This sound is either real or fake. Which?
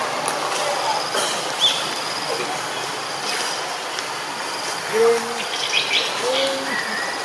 real